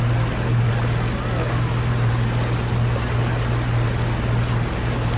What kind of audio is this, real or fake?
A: real